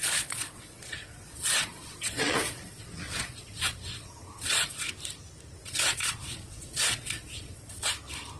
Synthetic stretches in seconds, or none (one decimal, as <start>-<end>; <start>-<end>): 0.0-4.9; 5.6-7.9